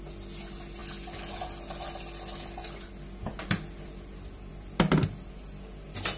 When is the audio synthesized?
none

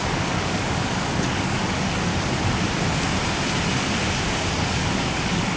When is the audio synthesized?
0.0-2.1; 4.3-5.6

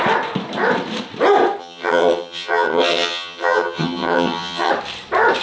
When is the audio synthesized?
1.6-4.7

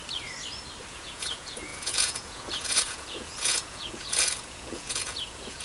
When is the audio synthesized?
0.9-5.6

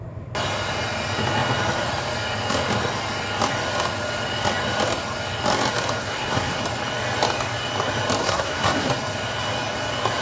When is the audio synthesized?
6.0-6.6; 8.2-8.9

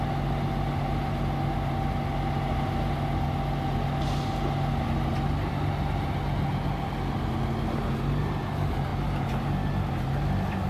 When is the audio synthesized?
none